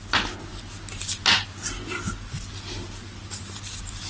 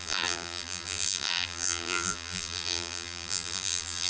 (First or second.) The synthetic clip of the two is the second